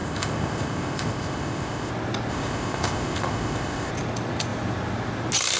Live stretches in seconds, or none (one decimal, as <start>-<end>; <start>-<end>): 1.9-2.3; 3.9-5.6